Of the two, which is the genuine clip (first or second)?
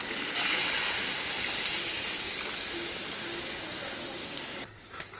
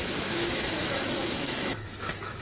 first